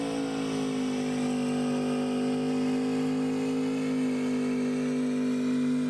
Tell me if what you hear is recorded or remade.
recorded